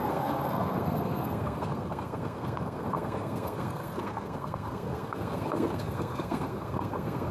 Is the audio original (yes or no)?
no